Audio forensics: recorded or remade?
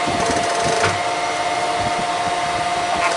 recorded